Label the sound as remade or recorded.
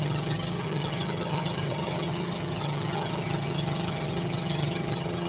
remade